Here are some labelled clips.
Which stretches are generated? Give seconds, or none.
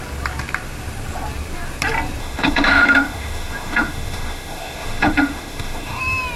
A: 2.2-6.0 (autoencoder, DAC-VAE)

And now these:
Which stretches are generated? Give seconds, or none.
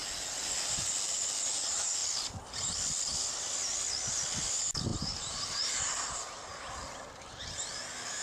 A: 4.9-6.7 (vocoder, BigVGAN v2)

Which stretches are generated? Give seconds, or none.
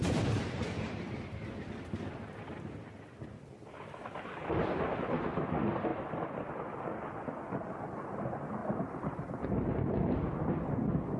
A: 0.0-1.0 (vocoder, BigVGAN v2); 5.9-7.2; 8.6-9.5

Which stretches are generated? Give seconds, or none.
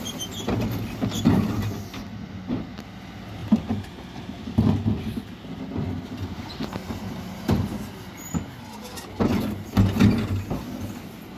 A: none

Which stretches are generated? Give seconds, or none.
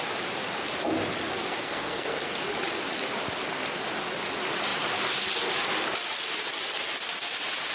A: 1.3-2.3 (codec, SNAC)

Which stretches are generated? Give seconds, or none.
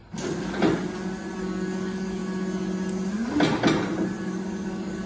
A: 1.4-2.2 (codec, DAC); 4.2-5.1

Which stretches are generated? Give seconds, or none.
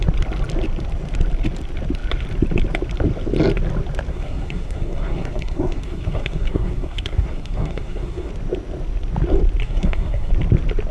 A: 4.1-8.3 (codec, SNAC); 9.6-10.3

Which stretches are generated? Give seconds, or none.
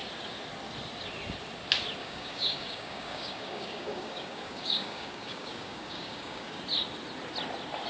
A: 2.0-6.6 (codec, DAC)